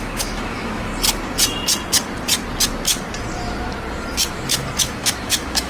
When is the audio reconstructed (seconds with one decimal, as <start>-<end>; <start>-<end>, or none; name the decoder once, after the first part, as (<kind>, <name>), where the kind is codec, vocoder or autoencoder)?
0.0-0.9 (autoencoder, DAC-VAE); 4.3-5.7